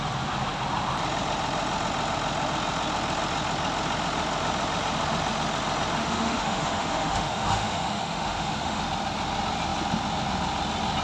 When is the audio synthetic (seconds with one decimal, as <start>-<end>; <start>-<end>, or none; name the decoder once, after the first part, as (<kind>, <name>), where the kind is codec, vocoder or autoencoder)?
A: 6.0-8.8 (autoencoder, DAC-VAE)